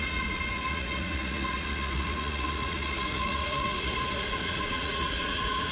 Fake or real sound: fake